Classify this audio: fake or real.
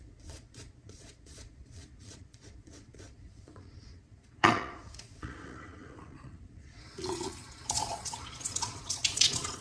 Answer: fake